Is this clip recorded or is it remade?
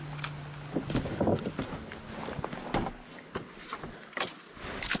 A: recorded